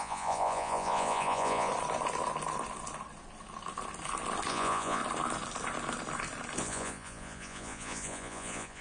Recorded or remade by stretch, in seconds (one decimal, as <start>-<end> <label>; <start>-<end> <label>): 0.0-1.7 remade; 1.7-4.5 recorded; 4.5-5.0 remade; 5.0-6.6 recorded; 6.6-8.8 remade